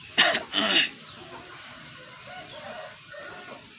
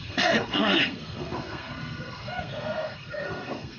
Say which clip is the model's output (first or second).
second